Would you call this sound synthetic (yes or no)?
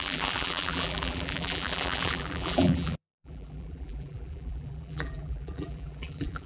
yes